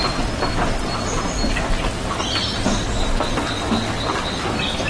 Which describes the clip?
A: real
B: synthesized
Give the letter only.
A